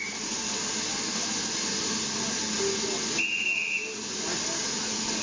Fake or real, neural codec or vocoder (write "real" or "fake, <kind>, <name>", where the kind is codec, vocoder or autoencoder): real